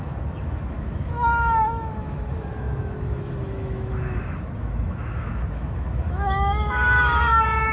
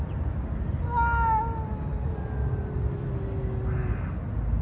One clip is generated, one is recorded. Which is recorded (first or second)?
second